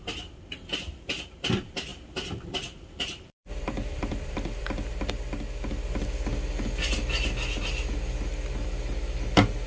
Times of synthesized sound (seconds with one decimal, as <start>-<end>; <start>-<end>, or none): 1.9-4.9